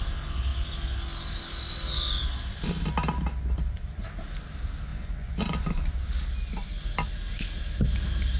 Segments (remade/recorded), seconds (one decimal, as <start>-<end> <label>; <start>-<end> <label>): 0.0-4.9 recorded; 4.9-5.4 remade; 5.4-8.4 recorded